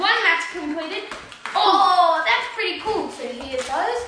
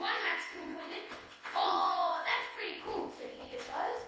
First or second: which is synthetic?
second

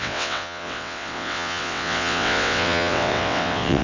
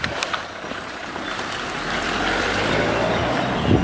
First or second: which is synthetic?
first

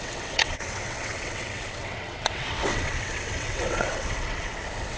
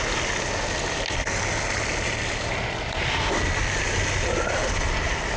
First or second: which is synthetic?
first